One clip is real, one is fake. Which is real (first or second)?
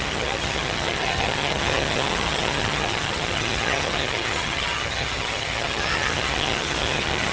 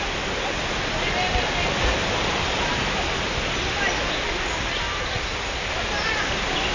second